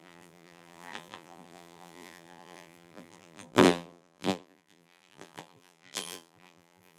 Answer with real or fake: fake